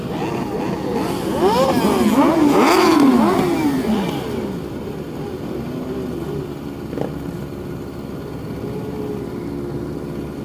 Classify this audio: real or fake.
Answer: real